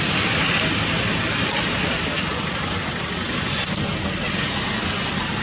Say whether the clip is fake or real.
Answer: real